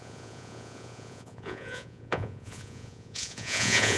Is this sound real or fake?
fake